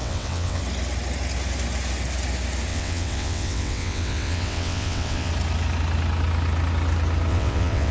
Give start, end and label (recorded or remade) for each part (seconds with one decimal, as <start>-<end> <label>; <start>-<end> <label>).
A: 0.0-0.6 remade; 0.6-2.7 recorded; 2.7-5.3 remade; 5.3-7.3 recorded; 7.3-7.9 remade